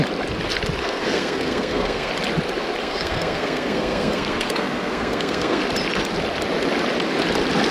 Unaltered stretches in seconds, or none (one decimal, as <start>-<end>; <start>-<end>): 0.0-0.8; 2.1-2.8; 5.6-7.7